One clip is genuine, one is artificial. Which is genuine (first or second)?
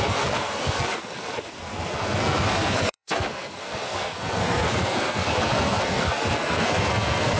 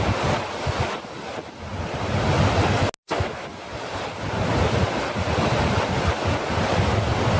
second